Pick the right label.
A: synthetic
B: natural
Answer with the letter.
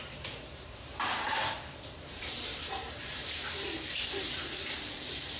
A